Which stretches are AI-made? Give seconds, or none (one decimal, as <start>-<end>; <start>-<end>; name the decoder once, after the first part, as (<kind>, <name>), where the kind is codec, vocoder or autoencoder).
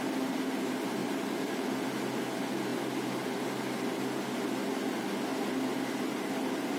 1.0-1.7 (vocoder, BigVGAN v2)